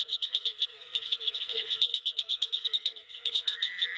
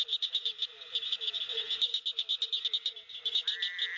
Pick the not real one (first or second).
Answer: first